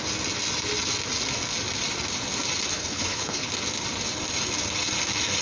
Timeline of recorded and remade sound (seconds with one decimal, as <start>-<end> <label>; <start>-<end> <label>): 0.0-2.8 recorded; 2.8-3.5 remade; 3.5-5.4 recorded